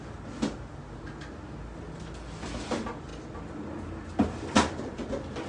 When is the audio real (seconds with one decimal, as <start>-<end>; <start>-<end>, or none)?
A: 0.0-5.5